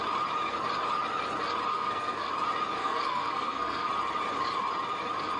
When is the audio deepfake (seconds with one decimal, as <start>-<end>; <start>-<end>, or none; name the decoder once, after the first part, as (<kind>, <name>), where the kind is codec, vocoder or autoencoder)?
1.7-2.3 (codec, SNAC); 2.8-3.9